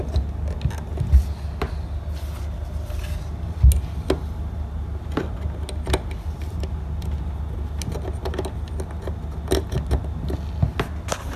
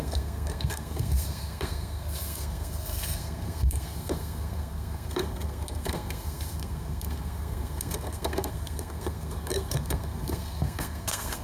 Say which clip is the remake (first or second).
second